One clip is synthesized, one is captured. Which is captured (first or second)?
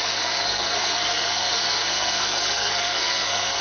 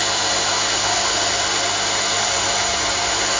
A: second